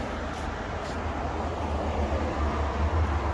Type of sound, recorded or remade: recorded